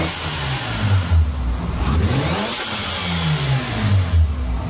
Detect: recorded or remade recorded